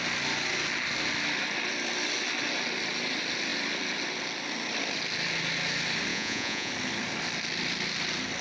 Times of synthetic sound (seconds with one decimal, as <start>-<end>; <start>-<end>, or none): 6.1-6.7